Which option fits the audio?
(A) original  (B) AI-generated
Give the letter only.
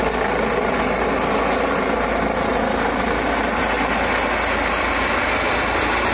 A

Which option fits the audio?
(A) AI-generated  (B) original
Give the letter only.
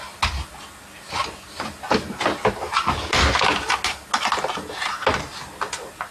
B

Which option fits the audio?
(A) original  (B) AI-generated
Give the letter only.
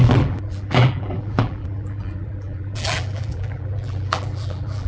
B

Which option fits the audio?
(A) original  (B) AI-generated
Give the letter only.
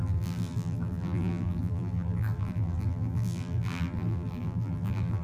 B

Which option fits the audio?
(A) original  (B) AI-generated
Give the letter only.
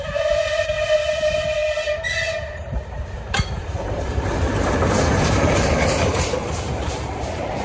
B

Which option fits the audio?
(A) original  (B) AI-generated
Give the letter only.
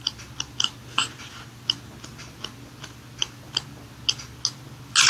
A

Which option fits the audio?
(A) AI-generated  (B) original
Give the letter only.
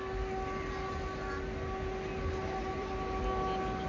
B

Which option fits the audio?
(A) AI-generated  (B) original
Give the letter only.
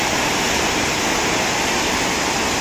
B